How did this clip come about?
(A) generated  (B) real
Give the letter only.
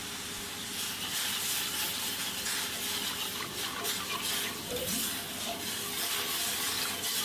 B